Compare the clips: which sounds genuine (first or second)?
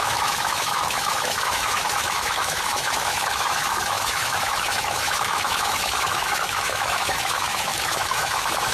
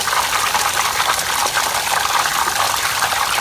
second